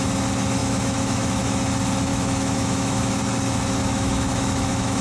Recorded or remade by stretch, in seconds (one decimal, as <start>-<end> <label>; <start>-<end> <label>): 0.0-0.6 recorded; 0.6-1.4 remade; 1.4-2.1 recorded; 2.1-3.1 remade; 3.1-3.8 recorded; 3.8-5.0 remade